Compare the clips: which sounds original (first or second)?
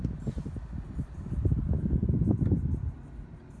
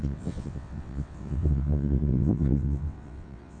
first